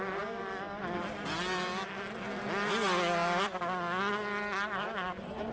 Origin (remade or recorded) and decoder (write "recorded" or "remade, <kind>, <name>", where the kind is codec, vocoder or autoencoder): recorded